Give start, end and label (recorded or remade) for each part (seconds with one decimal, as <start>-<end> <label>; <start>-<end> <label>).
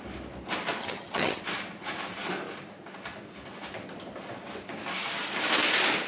0.0-0.8 recorded; 0.8-1.4 remade; 1.4-6.1 recorded